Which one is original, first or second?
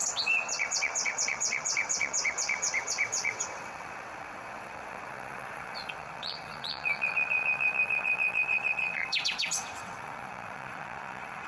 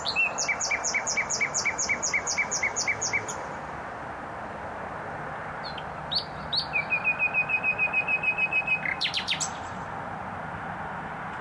second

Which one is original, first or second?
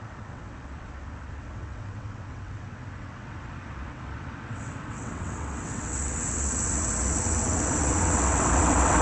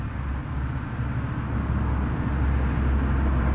second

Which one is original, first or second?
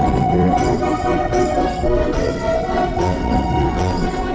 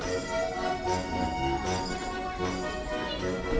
second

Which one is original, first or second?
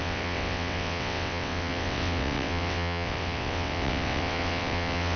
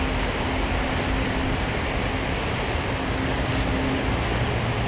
second